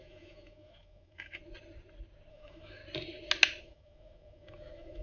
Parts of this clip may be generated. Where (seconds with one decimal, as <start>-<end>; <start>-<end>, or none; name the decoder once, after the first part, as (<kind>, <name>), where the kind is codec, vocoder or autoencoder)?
0.0-1.4 (autoencoder, DAC-VAE); 2.3-2.8; 3.6-5.0